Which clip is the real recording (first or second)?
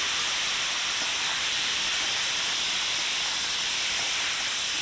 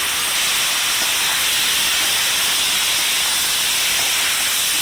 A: second